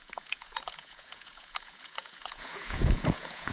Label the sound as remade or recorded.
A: remade